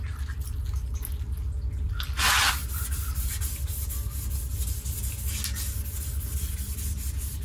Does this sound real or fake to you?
real